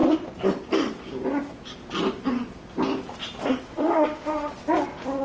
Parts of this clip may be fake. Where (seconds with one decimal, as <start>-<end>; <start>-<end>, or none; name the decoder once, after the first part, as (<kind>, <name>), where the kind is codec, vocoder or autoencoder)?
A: 3.7-4.5 (autoencoder, DAC-VAE)